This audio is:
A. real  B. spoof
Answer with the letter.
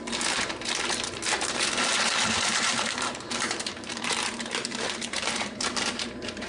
B